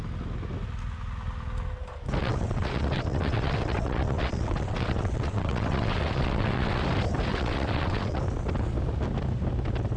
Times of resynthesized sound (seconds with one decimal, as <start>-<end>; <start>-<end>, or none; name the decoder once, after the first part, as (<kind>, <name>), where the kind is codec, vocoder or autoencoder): 2.2-6.8 (vocoder, WaveNeXt); 7.3-8.2